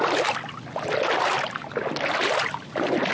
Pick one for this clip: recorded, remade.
recorded